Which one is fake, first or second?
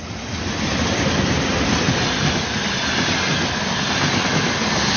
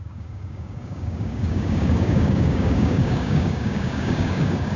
second